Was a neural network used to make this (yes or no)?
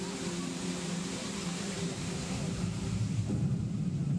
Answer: yes